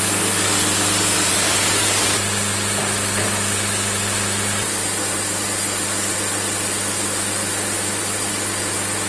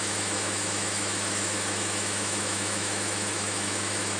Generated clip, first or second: second